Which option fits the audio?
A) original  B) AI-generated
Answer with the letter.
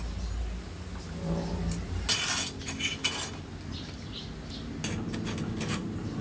A